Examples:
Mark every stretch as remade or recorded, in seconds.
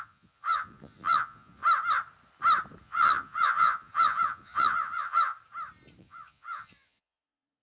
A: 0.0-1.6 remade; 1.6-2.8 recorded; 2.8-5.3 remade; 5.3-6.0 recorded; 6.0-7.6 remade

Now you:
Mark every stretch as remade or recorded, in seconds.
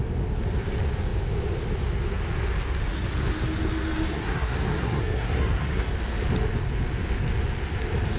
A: 0.0-4.1 recorded; 4.1-5.9 remade; 5.9-8.2 recorded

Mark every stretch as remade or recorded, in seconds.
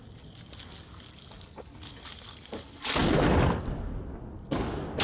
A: 0.0-5.0 recorded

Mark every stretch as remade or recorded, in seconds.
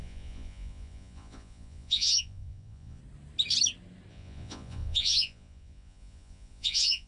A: 0.0-3.0 remade; 3.0-4.1 recorded; 4.1-7.1 remade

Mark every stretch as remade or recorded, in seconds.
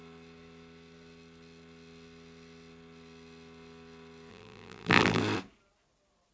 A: 0.0-4.3 recorded; 4.3-5.2 remade; 5.2-6.3 recorded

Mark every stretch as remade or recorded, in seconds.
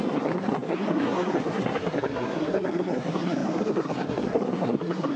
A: 0.0-5.2 remade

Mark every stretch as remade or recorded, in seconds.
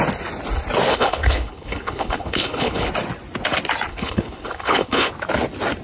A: 0.0-0.9 recorded; 0.9-2.9 remade; 2.9-3.9 recorded; 3.9-5.1 remade; 5.1-5.8 recorded